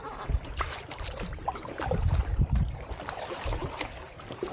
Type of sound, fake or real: fake